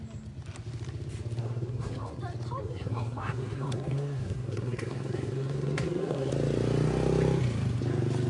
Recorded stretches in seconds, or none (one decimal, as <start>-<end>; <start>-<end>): 0.0-1.4; 2.2-2.6; 6.3-8.3